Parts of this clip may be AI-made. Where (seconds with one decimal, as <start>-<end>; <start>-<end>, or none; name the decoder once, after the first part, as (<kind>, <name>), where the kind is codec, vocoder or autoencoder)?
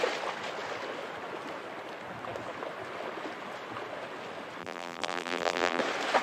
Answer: 4.6-5.8 (vocoder, BigVGAN v2)